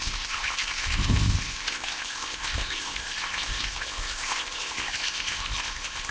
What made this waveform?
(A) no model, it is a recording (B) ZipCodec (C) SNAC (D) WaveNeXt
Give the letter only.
B